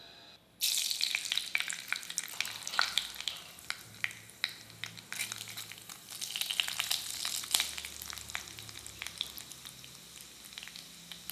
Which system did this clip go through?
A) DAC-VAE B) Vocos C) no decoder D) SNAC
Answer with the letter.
C